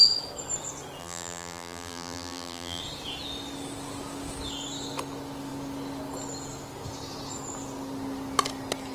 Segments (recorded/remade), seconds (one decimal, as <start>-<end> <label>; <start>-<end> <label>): 0.0-1.0 recorded; 1.0-2.8 remade; 2.8-8.9 recorded